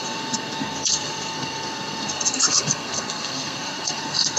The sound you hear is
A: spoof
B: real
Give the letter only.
A